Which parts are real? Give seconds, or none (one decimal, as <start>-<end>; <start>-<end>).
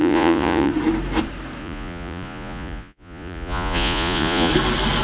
0.7-1.6; 4.5-5.0